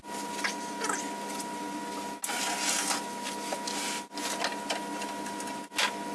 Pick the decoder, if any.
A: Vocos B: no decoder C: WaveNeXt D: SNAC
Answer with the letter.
B